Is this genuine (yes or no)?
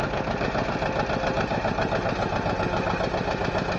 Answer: yes